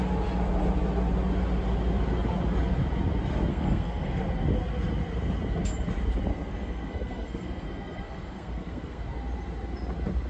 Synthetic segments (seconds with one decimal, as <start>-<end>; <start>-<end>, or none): 3.5-4.2; 6.3-9.0